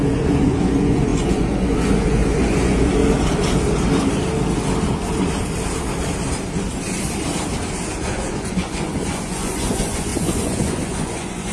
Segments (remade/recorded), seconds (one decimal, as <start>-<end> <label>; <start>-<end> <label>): 0.0-3.0 remade; 3.0-7.9 recorded; 7.9-11.5 remade

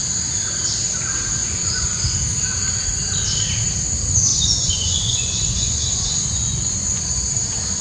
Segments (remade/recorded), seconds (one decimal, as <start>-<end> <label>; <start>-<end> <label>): 0.0-1.4 recorded; 1.4-2.2 remade; 2.2-4.3 recorded; 4.3-7.3 remade; 7.3-7.8 recorded

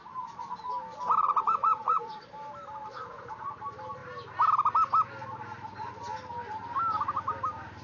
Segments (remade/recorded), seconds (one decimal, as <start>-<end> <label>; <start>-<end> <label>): 0.0-1.2 recorded; 1.2-2.2 remade; 2.2-2.8 recorded; 2.8-3.6 remade; 3.6-7.8 recorded

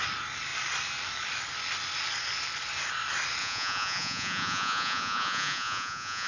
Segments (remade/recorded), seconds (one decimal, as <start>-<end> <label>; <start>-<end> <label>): 0.0-3.4 recorded; 3.4-6.3 remade

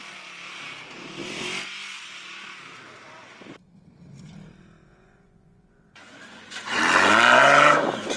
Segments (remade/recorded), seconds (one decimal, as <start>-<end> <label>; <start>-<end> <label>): 0.0-4.9 recorded; 4.9-6.8 remade; 6.8-8.2 recorded